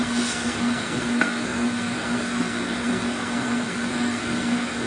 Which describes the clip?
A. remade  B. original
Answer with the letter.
A